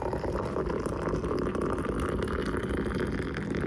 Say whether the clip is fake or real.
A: fake